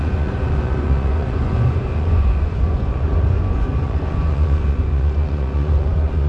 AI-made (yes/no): yes